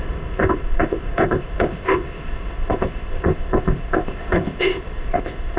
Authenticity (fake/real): fake